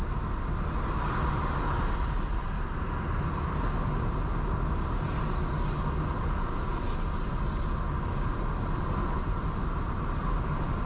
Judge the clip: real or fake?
real